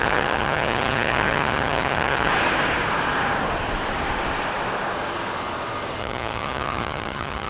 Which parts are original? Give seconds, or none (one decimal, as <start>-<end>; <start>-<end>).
2.3-6.0